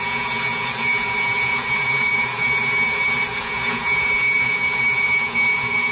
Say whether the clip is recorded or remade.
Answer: remade